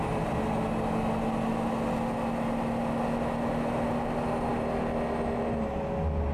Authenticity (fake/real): real